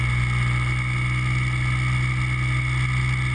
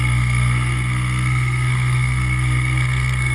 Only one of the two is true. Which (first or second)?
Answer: first